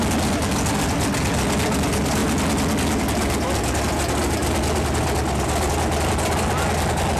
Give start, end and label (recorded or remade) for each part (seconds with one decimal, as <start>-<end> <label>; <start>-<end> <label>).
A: 0.0-7.2 recorded